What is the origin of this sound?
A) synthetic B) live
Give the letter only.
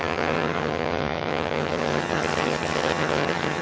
A